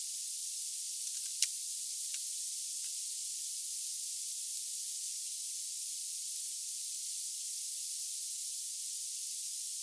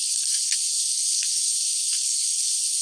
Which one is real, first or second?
first